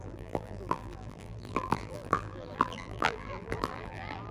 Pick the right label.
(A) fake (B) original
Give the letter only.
A